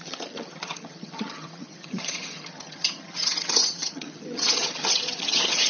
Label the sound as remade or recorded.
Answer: remade